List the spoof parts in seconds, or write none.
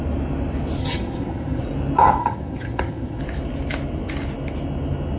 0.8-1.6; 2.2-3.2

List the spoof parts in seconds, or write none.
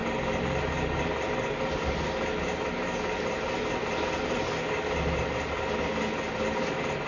none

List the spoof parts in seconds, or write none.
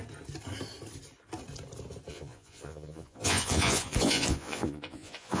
2.1-5.4